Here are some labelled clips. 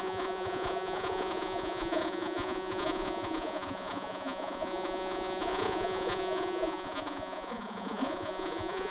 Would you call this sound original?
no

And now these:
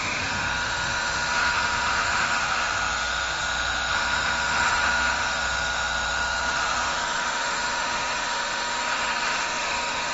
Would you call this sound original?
no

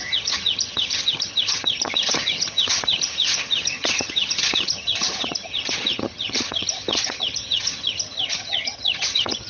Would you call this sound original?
no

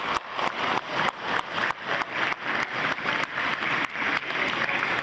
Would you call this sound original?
yes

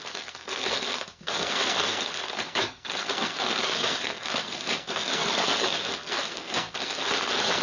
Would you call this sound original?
no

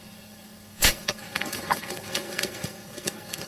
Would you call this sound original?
no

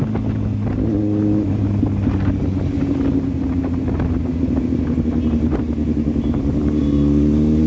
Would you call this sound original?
yes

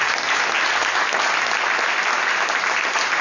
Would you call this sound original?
yes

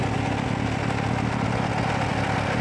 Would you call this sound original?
yes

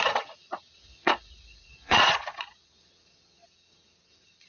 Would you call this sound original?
no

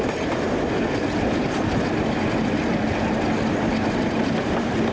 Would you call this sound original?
yes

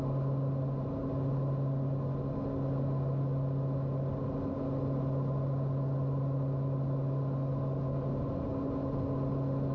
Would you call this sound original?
yes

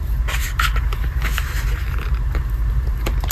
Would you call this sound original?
no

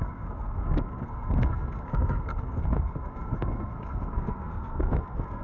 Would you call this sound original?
no